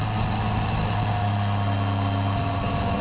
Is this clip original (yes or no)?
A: yes